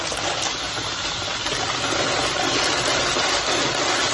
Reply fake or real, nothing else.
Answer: real